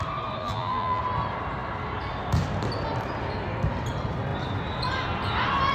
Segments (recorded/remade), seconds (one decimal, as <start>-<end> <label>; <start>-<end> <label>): 0.0-0.4 recorded; 0.4-1.0 remade; 1.0-5.7 recorded